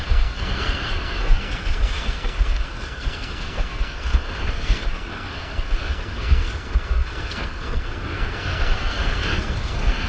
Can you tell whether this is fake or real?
fake